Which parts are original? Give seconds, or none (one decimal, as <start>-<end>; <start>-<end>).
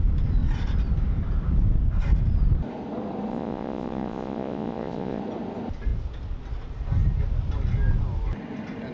0.0-3.3; 5.2-8.9